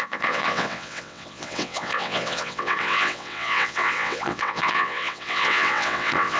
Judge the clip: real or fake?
fake